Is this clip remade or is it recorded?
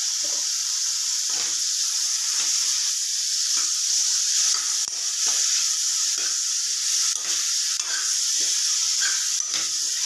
recorded